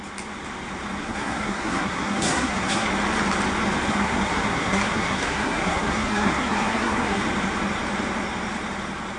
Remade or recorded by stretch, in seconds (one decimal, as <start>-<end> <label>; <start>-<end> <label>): 0.0-1.0 recorded; 1.0-2.9 remade; 2.9-3.9 recorded; 3.9-7.2 remade; 7.2-9.2 recorded